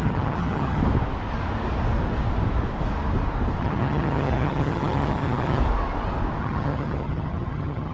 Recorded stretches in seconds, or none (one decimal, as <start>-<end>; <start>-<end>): 0.8-3.6; 5.6-6.4

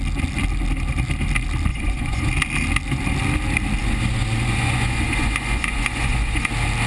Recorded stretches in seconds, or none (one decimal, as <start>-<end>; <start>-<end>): 0.0-1.7; 2.3-3.8; 6.5-6.9

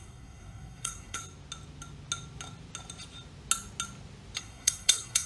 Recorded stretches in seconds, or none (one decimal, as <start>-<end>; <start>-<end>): 1.2-4.4